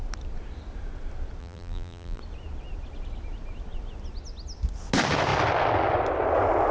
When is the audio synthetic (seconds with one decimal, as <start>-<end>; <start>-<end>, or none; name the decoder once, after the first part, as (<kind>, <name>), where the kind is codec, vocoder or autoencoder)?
1.4-2.2 (vocoder, BigVGAN v2)

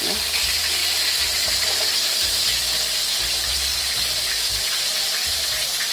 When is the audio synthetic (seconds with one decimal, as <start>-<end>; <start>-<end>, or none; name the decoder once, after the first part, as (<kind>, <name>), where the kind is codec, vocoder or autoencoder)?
3.7-5.3 (vocoder, BigVGAN v2)